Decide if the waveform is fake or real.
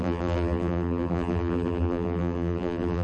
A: fake